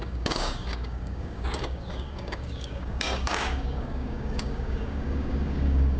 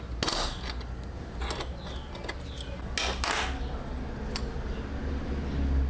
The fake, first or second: first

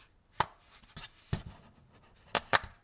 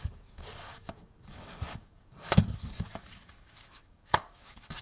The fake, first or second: second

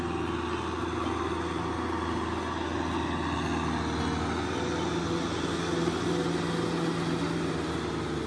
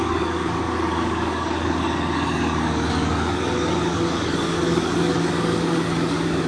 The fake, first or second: second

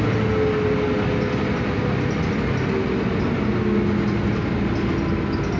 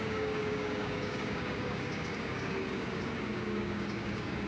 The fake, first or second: second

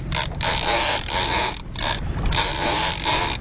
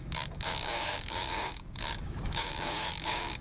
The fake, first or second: second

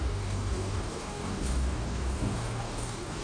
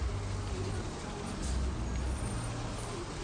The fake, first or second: first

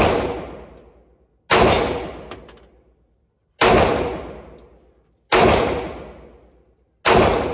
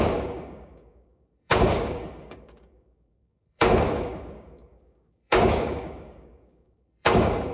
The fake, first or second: second